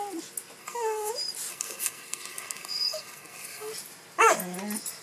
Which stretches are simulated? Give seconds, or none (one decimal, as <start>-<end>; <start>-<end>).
0.6-1.1; 1.5-3.7